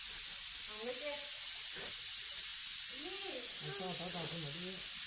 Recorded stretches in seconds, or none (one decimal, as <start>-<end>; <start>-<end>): 0.0-5.1